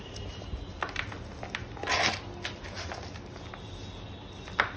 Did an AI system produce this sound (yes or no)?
no